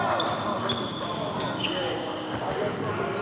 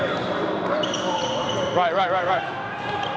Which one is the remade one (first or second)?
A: second